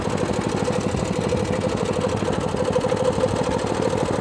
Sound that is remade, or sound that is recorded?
recorded